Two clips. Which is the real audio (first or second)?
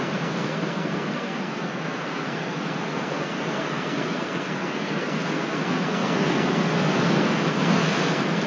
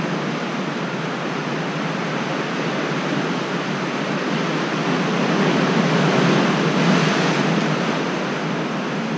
second